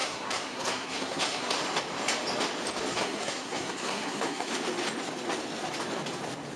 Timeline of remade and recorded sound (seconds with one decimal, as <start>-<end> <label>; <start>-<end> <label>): 0.0-1.5 remade; 1.5-2.9 recorded; 2.9-4.5 remade; 4.5-6.6 recorded